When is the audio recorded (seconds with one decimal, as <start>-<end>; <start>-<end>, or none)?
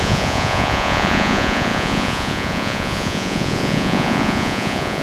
none